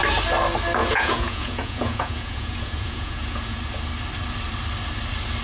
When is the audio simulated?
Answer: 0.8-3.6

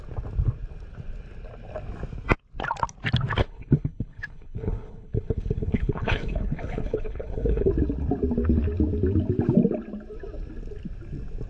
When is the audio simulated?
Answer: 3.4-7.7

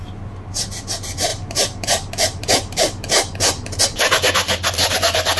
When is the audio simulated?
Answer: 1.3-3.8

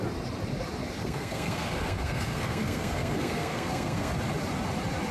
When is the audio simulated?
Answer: 1.0-4.1

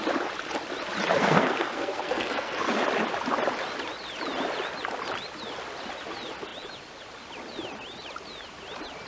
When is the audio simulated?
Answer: 1.1-2.8

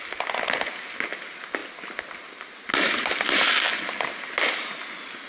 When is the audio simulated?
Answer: none